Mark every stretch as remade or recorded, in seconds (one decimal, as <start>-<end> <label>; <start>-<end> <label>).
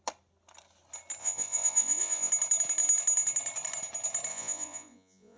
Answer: 0.0-1.2 recorded; 1.2-2.3 remade; 2.3-4.3 recorded; 4.3-5.4 remade